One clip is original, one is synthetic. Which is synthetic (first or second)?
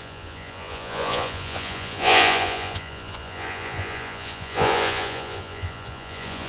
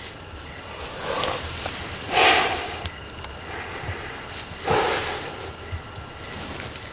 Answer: first